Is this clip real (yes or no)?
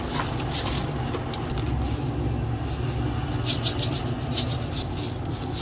yes